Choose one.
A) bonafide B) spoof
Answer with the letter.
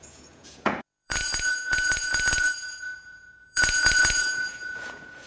B